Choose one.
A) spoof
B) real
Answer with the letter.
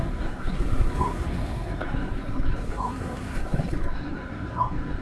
A